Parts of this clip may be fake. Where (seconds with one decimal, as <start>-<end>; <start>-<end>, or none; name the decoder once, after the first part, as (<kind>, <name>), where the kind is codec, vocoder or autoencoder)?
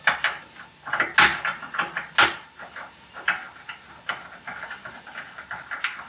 none